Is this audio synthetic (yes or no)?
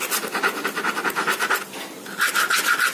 no